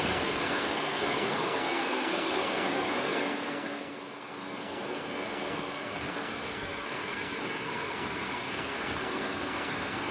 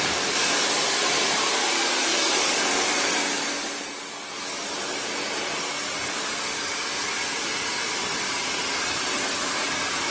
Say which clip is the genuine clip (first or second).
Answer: second